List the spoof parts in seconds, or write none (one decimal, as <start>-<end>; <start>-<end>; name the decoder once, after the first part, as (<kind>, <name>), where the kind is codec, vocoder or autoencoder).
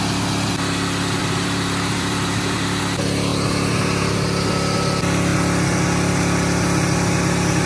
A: 1.2-2.8 (vocoder, BigVGAN v2); 3.3-4.1